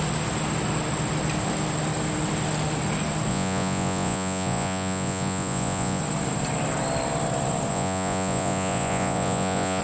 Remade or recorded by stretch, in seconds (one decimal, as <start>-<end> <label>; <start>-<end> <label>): 0.0-3.3 recorded; 3.3-6.0 remade; 6.0-7.7 recorded; 7.7-9.8 remade